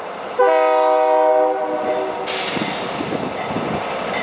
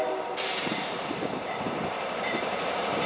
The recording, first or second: first